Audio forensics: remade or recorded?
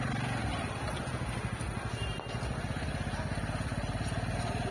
recorded